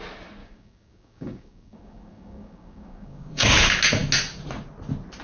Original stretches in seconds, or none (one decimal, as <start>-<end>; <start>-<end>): 0.0-0.4; 3.5-5.2